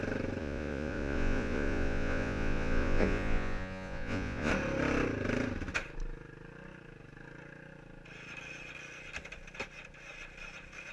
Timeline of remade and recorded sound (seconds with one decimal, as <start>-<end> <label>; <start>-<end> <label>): 0.0-0.4 recorded; 0.4-4.5 remade; 4.5-10.9 recorded